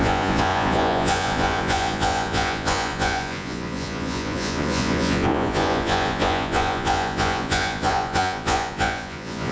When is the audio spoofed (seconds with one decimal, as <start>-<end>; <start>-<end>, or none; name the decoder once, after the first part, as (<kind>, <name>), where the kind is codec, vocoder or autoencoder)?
0.0-9.5 (vocoder, Vocos)